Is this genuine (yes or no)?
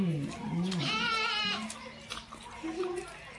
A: yes